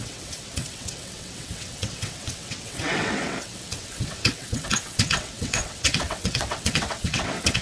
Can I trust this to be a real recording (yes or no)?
no